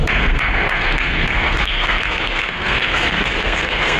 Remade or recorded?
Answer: remade